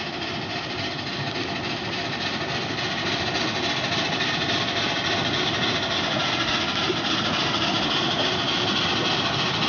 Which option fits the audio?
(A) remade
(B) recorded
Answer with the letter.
B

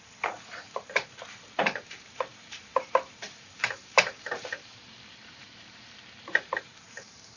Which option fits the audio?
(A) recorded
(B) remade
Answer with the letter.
B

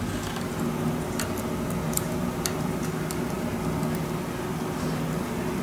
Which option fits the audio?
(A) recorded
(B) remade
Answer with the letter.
A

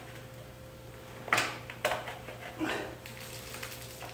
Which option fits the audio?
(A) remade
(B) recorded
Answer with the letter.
B